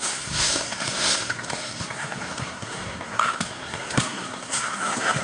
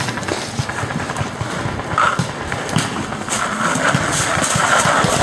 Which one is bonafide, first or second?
second